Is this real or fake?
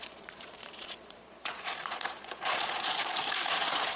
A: fake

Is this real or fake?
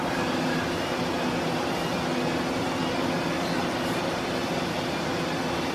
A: real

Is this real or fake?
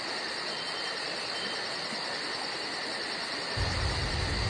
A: real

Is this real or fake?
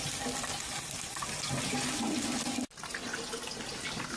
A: real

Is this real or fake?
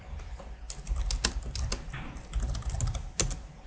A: real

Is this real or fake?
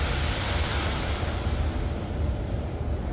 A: real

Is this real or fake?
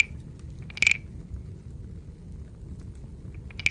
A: real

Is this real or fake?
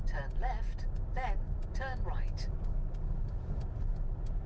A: real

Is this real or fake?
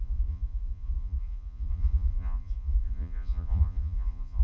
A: fake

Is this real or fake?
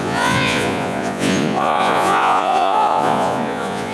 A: fake